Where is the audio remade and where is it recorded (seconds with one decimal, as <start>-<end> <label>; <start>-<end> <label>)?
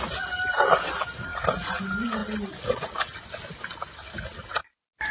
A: 0.0-5.1 recorded